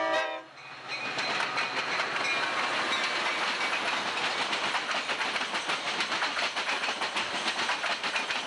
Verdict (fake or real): real